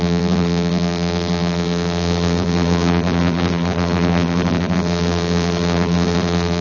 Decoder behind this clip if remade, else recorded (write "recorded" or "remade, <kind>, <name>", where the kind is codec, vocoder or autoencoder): remade, vocoder, BigVGAN v2